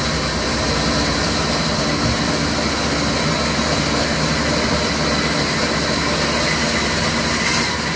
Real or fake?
real